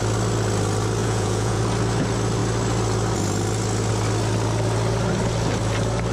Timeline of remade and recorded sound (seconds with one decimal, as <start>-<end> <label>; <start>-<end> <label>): 0.0-1.0 recorded; 1.0-1.6 remade; 1.6-6.1 recorded